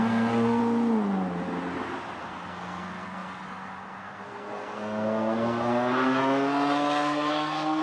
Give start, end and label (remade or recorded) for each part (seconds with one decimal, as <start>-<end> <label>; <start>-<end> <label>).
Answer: 0.0-0.6 remade; 0.6-2.2 recorded; 2.2-7.8 remade

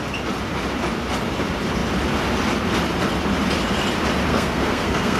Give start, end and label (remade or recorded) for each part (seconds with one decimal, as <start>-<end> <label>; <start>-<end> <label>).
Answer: 0.0-4.3 recorded; 4.3-5.2 remade

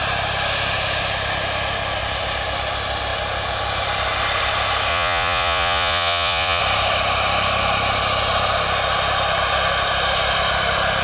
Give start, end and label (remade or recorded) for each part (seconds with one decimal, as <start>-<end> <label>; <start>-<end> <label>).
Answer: 0.0-4.9 recorded; 4.9-6.6 remade; 6.6-11.0 recorded

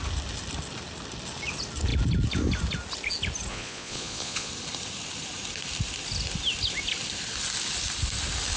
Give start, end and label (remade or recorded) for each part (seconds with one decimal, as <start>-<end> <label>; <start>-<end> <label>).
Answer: 0.0-3.5 recorded; 3.5-4.5 remade; 4.5-8.6 recorded

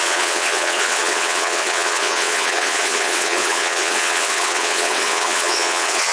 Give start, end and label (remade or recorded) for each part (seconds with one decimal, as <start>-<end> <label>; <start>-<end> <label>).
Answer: 0.0-6.1 remade

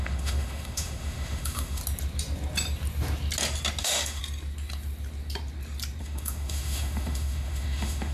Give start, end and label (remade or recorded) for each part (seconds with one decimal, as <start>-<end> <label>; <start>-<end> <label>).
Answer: 0.0-1.8 remade; 1.8-3.8 recorded; 3.8-4.2 remade; 4.2-6.0 recorded; 6.0-8.1 remade

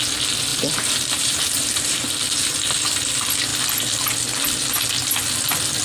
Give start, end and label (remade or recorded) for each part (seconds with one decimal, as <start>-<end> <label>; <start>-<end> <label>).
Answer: 0.0-0.5 recorded; 0.5-2.1 remade; 2.1-5.8 recorded